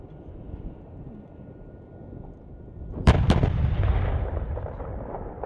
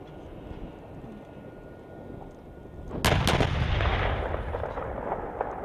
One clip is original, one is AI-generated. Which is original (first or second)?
second